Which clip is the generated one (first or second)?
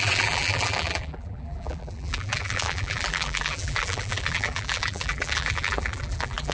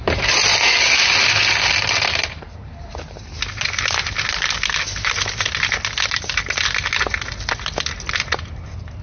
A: first